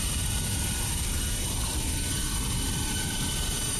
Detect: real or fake fake